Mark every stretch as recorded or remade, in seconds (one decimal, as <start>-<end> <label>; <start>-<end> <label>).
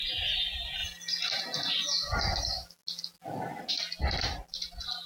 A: 0.0-5.1 recorded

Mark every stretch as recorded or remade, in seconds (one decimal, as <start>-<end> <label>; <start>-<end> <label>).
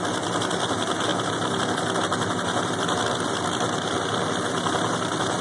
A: 0.0-5.4 recorded